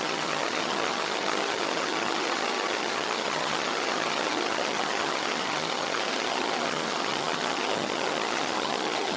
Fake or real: fake